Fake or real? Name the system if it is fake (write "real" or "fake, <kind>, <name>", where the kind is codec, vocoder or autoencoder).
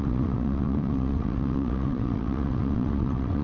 fake, vocoder, WaveNeXt